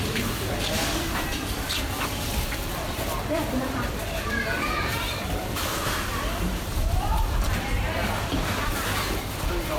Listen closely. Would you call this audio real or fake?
fake